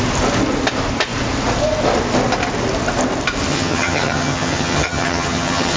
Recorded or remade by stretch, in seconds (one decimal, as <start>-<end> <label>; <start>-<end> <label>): 0.0-3.5 recorded; 3.5-5.8 remade